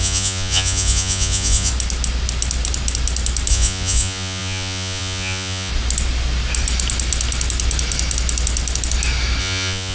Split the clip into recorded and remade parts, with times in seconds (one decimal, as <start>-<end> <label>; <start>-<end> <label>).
0.0-1.7 remade; 1.7-3.5 recorded; 3.5-5.7 remade; 5.7-9.4 recorded; 9.4-9.9 remade